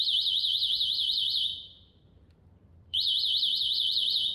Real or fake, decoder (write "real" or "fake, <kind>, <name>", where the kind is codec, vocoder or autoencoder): fake, vocoder, BigVGAN v2